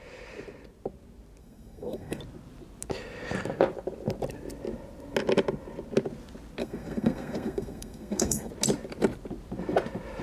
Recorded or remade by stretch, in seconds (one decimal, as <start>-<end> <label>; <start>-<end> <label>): 0.0-1.4 recorded; 1.4-2.2 remade; 2.2-6.6 recorded; 6.6-8.5 remade; 8.5-10.2 recorded